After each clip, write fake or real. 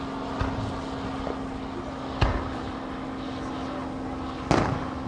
real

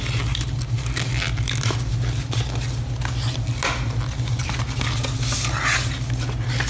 real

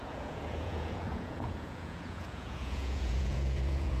fake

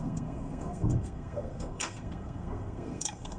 fake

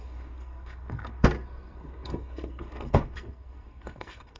fake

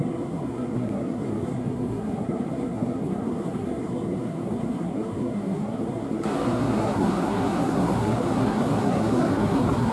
fake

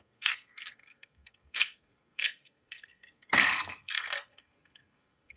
fake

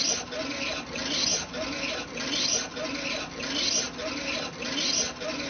real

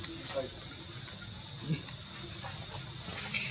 real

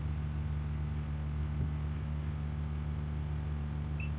real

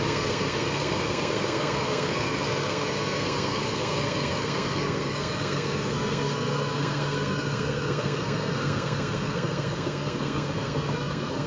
fake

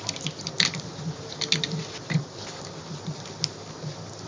real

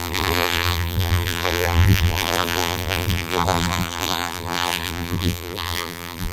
fake